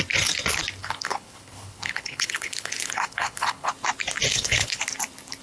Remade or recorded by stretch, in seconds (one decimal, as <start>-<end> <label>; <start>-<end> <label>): 0.0-0.8 recorded; 0.8-3.7 remade; 3.7-4.3 recorded; 4.3-4.8 remade; 4.8-5.4 recorded

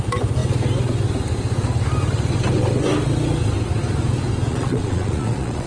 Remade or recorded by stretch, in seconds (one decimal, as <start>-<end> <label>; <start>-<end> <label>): 0.0-4.5 recorded; 4.5-5.7 remade